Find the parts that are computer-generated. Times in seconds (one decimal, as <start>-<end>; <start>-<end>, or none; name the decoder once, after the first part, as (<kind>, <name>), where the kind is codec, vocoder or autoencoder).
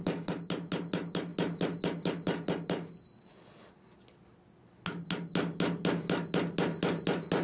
none